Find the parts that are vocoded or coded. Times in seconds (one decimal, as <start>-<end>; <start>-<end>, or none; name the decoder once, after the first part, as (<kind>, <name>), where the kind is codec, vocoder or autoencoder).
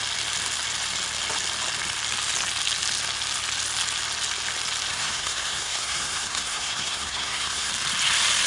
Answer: 4.9-7.7 (codec, SNAC)